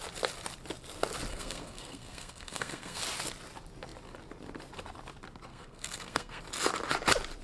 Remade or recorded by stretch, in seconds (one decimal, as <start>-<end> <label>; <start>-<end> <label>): 0.0-1.3 recorded; 1.3-3.0 remade; 3.0-5.5 recorded; 5.5-6.4 remade; 6.4-7.4 recorded